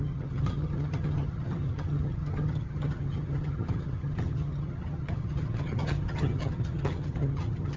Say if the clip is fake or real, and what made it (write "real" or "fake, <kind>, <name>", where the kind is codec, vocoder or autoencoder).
fake, vocoder, HiFi-GAN